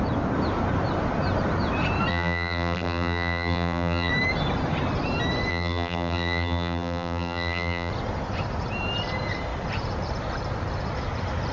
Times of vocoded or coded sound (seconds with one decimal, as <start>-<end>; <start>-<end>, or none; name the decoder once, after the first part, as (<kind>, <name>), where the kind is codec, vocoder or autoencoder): 2.1-4.1 (vocoder, BigVGAN v2); 5.5-7.9